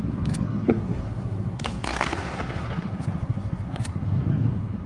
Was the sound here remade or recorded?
remade